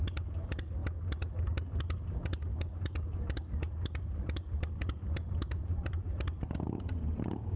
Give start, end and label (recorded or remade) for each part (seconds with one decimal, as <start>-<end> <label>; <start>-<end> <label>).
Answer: 0.0-0.8 remade; 0.8-1.8 recorded; 1.8-7.6 remade